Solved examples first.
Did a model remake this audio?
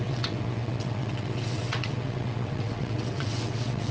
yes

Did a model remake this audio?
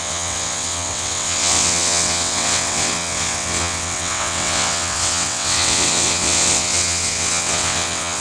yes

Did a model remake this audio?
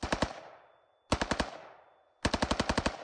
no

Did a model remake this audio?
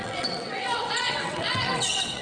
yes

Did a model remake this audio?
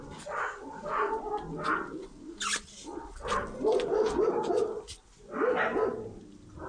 no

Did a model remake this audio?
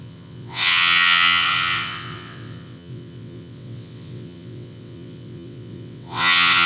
yes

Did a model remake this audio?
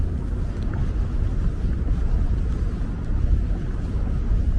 no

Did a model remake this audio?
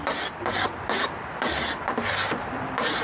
no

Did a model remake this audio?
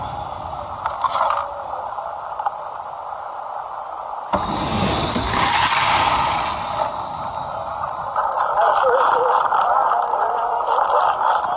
no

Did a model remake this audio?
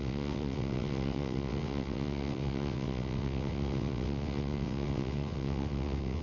yes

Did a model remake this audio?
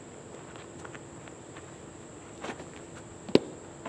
no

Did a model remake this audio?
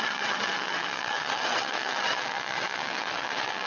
yes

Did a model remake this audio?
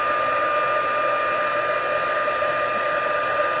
no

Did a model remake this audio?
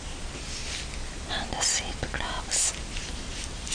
no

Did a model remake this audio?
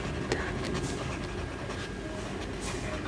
no